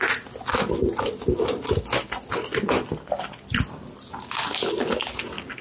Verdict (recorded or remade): recorded